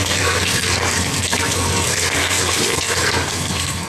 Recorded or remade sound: remade